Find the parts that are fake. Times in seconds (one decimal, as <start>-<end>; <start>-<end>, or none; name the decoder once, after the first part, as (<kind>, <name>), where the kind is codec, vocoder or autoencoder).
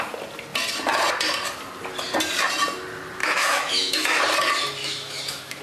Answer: 3.2-4.2 (autoencoder, DAC-VAE); 4.8-5.6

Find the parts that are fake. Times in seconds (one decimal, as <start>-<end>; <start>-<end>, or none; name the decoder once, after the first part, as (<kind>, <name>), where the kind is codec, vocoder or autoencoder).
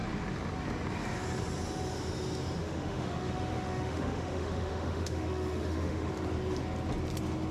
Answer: 2.6-6.1 (autoencoder, DAC-VAE)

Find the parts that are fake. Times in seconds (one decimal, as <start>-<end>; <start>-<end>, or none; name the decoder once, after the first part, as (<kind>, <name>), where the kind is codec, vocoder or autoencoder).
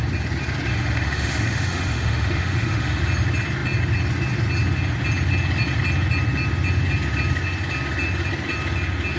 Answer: 0.7-3.0 (autoencoder, DAC-VAE)